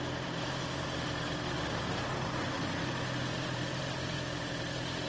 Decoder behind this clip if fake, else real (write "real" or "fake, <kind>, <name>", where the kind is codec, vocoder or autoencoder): real